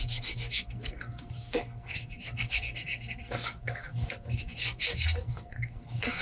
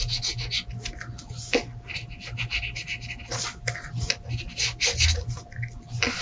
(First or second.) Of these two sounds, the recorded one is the second